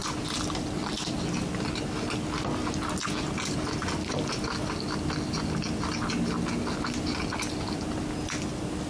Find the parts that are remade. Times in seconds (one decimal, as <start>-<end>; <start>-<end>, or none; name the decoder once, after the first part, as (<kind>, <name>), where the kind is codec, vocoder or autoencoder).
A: none